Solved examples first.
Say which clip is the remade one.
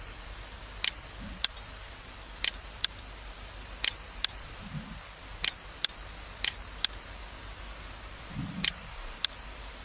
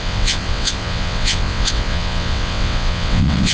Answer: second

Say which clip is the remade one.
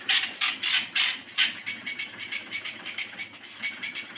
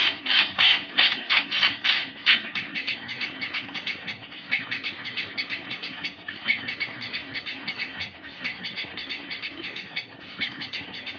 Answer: second